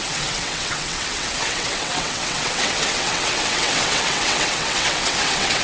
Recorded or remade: remade